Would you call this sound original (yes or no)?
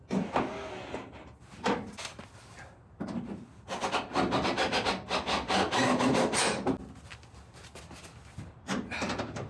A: yes